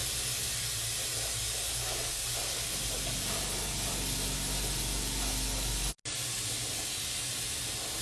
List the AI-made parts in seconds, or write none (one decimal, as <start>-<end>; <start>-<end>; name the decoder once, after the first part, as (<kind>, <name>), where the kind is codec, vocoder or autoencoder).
none